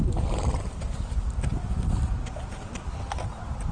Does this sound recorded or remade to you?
recorded